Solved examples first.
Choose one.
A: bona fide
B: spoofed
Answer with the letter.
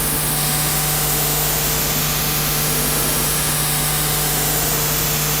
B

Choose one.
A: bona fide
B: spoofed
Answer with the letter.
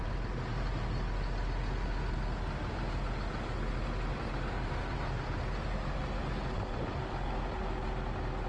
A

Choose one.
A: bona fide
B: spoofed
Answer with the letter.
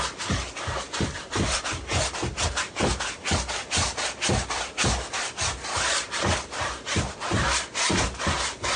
A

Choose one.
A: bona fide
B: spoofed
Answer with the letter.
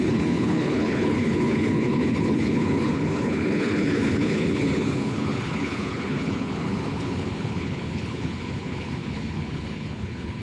B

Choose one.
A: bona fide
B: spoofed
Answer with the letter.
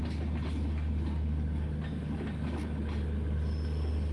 A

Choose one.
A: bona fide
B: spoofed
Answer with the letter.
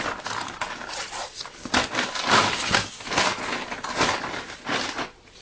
A